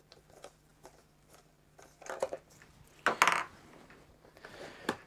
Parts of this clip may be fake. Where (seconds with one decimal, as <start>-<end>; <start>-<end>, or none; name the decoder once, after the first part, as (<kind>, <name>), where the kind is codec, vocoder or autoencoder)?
0.0-2.7 (vocoder, BigVGAN v2); 3.8-5.1